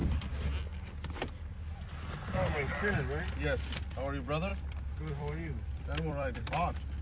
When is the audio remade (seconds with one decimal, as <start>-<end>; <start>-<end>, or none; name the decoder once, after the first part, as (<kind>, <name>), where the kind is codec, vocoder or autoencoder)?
4.5-6.5 (vocoder, BigVGAN v2)